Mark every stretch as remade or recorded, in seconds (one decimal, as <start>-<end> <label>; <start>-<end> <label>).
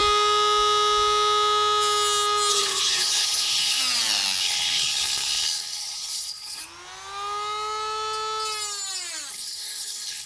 0.0-2.5 recorded; 2.5-3.8 remade; 3.8-4.4 recorded; 4.4-6.6 remade; 6.6-9.3 recorded; 9.3-10.3 remade